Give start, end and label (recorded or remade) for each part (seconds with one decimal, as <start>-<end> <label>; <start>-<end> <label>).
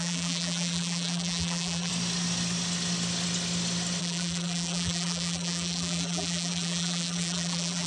0.0-1.9 remade; 1.9-4.0 recorded; 4.0-7.9 remade